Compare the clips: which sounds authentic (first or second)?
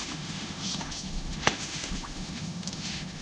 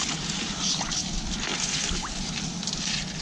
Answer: second